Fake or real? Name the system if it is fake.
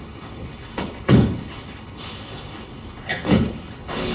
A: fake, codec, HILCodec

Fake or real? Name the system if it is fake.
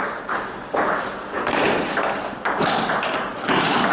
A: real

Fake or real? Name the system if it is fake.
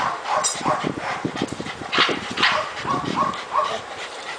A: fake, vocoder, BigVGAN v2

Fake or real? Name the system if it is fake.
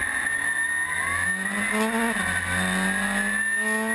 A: real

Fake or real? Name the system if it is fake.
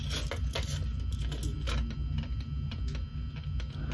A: real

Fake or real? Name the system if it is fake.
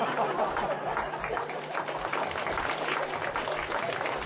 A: real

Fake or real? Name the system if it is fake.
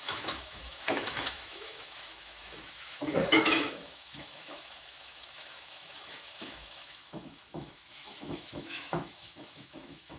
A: fake, autoencoder, DAC-VAE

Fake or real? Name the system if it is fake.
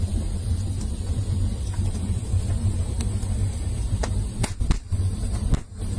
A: real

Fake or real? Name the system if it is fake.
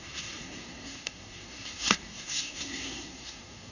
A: fake, codec, SNAC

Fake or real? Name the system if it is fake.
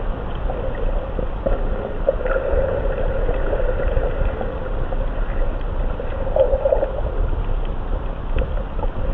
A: real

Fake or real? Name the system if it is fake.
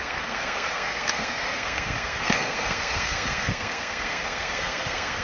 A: fake, codec, SNAC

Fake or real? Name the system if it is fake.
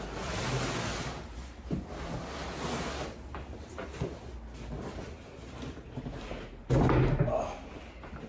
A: real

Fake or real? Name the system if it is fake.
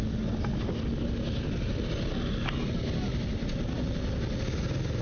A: real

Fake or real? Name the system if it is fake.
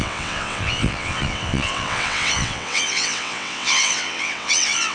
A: fake, vocoder, WaveNeXt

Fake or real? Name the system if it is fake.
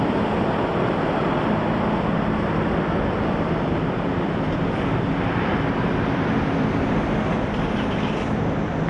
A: fake, vocoder, BigVGAN v2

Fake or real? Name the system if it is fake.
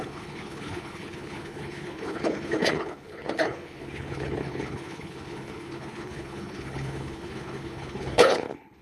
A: fake, codec, HILCodec